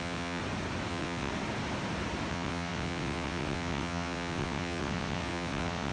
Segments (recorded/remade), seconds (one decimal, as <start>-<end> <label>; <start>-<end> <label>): 0.0-0.4 remade; 0.4-0.9 recorded; 0.9-1.3 remade; 1.3-2.3 recorded; 2.3-5.9 remade